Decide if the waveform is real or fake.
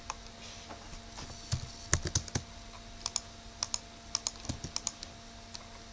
real